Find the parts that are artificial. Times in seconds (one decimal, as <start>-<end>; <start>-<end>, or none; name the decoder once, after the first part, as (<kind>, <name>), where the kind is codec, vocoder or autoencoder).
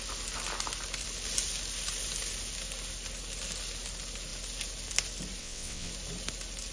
5.4-5.9 (vocoder, WaveNeXt)